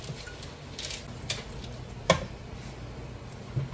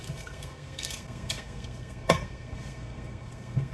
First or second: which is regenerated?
second